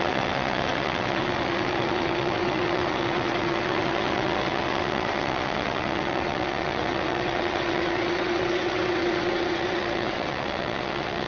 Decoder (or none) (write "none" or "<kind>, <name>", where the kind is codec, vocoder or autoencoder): vocoder, WaveNeXt